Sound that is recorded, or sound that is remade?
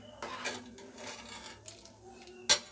recorded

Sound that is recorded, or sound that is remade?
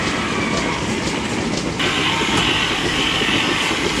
recorded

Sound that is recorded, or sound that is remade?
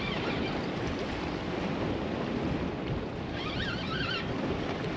recorded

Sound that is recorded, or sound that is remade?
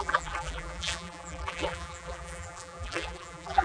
remade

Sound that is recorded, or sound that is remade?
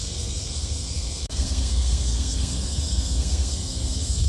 remade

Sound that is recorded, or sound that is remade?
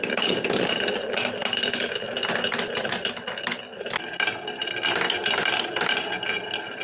recorded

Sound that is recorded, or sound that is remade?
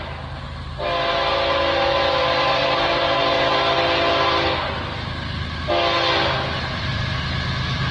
recorded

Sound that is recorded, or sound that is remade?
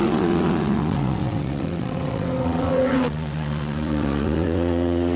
remade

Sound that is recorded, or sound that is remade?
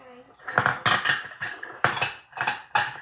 recorded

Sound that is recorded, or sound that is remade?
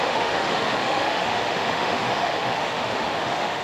remade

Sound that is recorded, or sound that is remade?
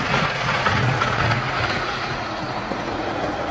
remade